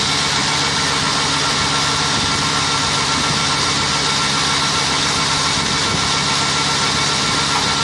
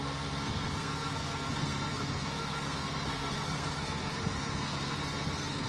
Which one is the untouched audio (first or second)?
first